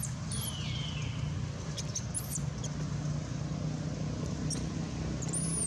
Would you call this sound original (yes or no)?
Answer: yes